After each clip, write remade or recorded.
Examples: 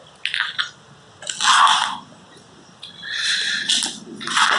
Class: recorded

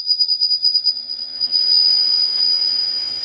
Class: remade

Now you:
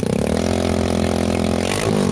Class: recorded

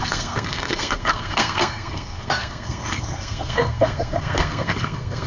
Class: remade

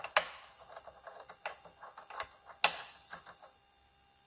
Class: recorded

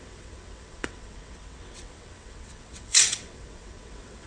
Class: remade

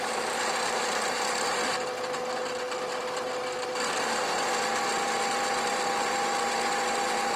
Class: recorded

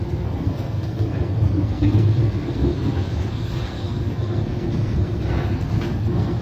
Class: remade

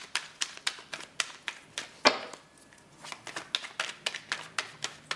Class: recorded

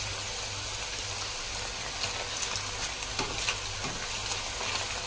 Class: recorded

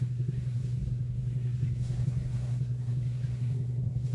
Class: remade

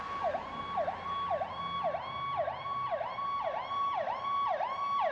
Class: recorded